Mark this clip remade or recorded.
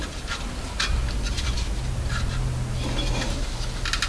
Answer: recorded